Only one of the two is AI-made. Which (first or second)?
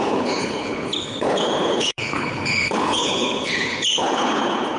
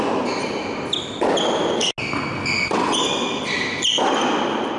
first